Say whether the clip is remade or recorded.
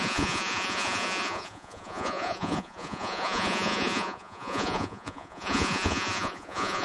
remade